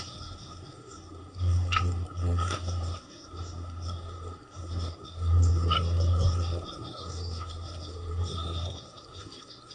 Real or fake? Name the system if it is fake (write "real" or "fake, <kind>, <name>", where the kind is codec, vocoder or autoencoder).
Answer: fake, codec, SNAC